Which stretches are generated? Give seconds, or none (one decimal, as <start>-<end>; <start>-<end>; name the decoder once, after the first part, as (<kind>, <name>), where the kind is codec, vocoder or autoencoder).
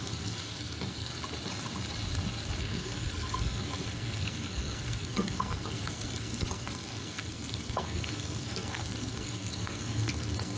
0.0-1.1 (codec, SNAC); 2.6-10.6